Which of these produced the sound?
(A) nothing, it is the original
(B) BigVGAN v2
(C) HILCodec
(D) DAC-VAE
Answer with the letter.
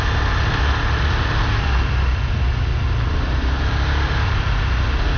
A